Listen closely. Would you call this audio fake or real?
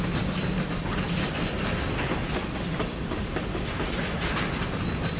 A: real